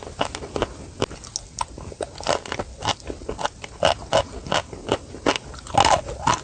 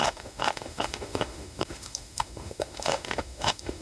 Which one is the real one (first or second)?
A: first